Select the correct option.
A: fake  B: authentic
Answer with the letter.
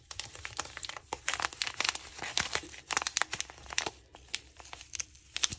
A